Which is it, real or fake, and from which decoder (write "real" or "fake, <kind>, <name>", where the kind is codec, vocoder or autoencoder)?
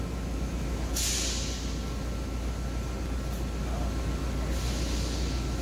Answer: real